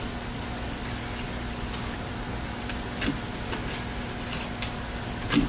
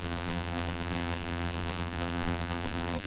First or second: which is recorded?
first